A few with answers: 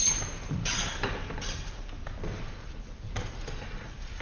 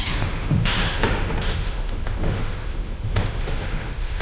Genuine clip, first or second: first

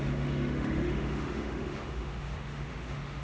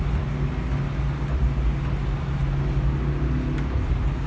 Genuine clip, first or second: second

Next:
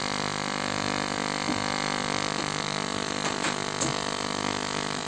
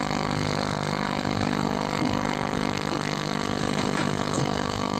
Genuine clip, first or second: first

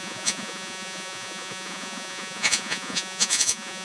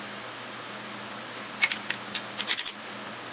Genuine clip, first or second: second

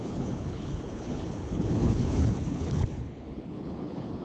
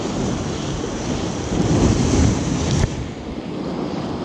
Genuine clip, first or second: second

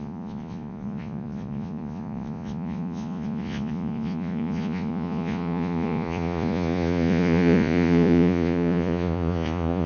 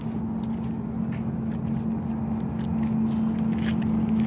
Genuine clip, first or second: second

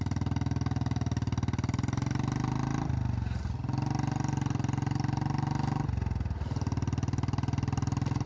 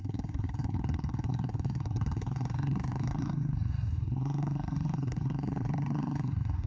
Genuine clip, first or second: first